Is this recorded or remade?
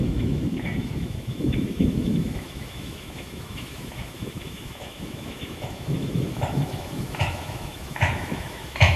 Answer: remade